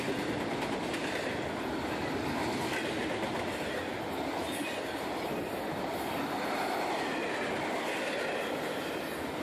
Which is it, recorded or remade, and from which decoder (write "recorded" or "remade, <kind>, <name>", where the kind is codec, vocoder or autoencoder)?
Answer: recorded